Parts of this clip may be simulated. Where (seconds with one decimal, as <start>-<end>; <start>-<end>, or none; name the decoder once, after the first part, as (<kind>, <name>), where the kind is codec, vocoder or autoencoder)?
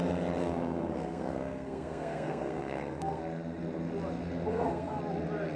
0.4-3.2 (codec, SNAC); 4.5-5.0